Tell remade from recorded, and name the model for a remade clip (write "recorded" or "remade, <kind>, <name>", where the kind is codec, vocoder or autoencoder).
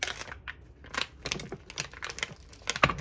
recorded